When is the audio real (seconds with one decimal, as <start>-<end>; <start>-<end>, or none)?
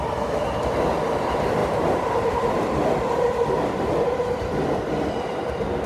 0.0-1.6; 5.1-5.9